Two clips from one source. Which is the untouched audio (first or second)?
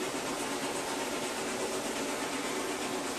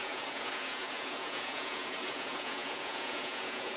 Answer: first